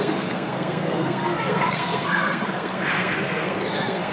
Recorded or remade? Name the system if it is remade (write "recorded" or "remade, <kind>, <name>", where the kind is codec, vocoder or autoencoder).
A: remade, codec, SNAC